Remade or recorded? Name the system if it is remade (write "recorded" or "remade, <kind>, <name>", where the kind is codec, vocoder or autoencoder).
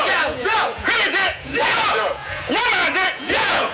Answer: remade, vocoder, Vocos